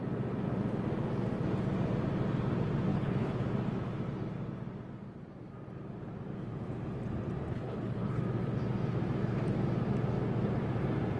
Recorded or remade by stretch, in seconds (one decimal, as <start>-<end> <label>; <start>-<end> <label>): 0.0-2.9 recorded; 2.9-3.4 remade; 3.4-7.5 recorded; 7.5-8.2 remade; 8.2-11.2 recorded